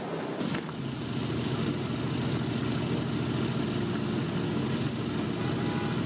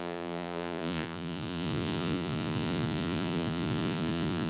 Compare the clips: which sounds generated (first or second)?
second